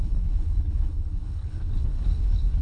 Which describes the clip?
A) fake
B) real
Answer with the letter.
A